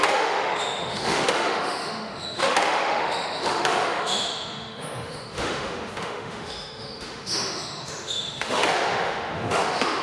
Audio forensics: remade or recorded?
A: remade